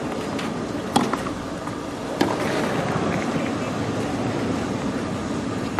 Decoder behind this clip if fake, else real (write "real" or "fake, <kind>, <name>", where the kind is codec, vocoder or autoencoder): real